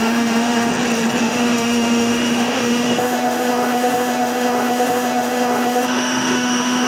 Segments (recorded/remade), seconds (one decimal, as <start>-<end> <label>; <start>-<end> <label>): 0.0-0.7 remade; 0.7-1.2 recorded; 1.2-6.9 remade

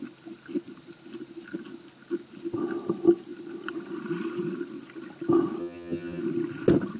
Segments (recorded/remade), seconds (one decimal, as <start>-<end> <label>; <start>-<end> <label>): 0.0-5.6 recorded; 5.6-6.2 remade; 6.2-7.0 recorded

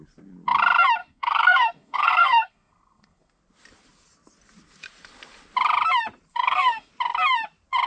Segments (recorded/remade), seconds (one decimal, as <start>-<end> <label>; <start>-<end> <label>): 0.0-1.0 recorded; 1.0-3.4 remade; 3.4-6.3 recorded; 6.3-6.9 remade; 6.9-7.9 recorded